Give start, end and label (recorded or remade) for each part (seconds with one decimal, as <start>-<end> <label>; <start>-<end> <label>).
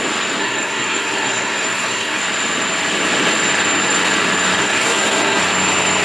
0.0-0.4 recorded; 0.4-2.2 remade; 2.2-4.6 recorded; 4.6-5.4 remade; 5.4-6.0 recorded